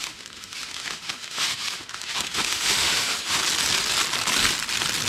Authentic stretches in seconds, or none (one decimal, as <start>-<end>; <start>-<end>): 3.4-5.1